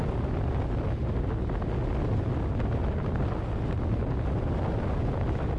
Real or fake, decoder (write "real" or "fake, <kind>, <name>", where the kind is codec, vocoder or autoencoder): real